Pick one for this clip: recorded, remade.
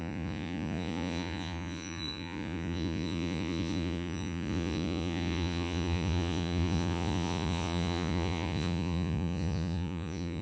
remade